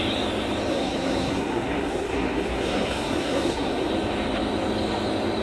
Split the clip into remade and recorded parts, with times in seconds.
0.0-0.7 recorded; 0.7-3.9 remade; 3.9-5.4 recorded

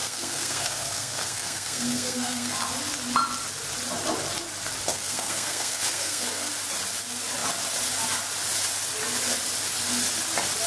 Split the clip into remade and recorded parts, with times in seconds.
0.0-2.7 remade; 2.7-4.9 recorded; 4.9-6.5 remade; 6.5-10.7 recorded